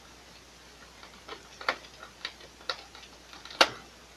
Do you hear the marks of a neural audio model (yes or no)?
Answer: no